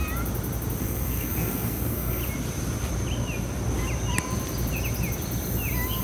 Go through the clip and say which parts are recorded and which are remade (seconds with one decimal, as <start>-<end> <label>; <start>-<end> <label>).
0.0-0.8 recorded; 0.8-2.2 remade; 2.2-6.0 recorded